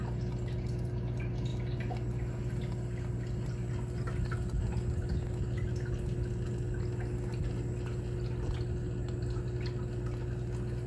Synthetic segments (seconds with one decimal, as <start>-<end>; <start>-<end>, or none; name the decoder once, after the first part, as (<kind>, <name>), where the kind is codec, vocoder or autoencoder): none